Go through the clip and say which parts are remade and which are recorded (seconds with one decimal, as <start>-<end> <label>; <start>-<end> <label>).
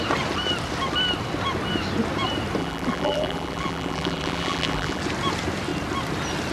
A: 0.0-2.6 recorded; 2.6-5.0 remade; 5.0-6.5 recorded